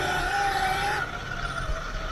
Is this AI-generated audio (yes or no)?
no